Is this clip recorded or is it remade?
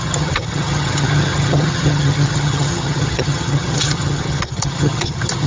remade